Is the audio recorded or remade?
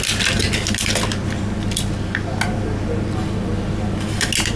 recorded